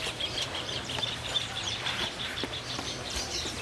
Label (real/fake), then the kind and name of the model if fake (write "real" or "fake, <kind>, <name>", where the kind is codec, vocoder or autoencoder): fake, vocoder, BigVGAN v2